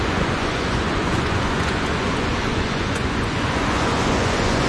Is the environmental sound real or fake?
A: fake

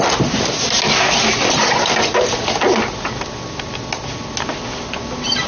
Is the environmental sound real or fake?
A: real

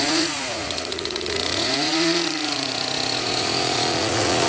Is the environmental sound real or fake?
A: fake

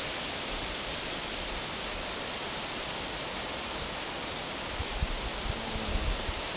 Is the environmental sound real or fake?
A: real